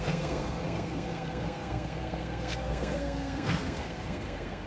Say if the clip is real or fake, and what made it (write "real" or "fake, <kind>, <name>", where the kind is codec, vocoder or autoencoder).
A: fake, codec, SNAC